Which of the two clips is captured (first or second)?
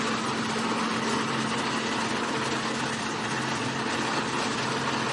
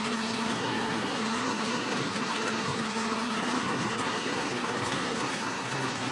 first